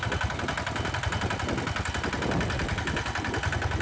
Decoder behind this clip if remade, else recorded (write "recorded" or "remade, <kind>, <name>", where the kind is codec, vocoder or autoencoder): recorded